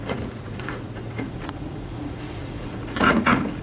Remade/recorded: remade